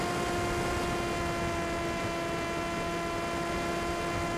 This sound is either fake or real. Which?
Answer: real